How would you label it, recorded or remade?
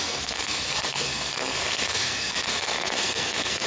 remade